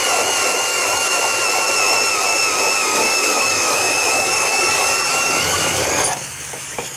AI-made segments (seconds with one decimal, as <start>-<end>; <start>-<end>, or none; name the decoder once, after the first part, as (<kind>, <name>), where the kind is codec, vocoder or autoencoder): 0.7-1.2 (codec, DAC); 2.8-7.0